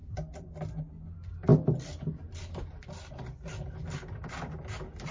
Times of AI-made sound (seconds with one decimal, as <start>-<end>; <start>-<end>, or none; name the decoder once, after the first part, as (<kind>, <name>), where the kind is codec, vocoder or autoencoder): 0.0-0.6 (vocoder, BigVGAN v2); 1.5-2.2